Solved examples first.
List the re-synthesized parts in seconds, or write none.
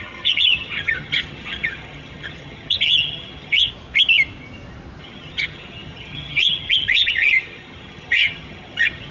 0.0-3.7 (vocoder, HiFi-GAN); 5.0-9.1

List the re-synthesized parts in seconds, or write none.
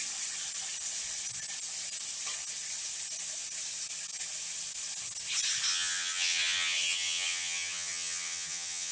5.7-8.9 (vocoder, HiFi-GAN)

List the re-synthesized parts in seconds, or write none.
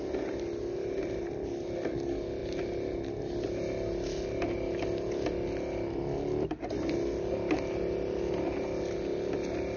none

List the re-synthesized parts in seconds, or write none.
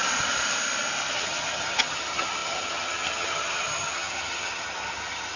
1.1-5.4 (vocoder, HiFi-GAN)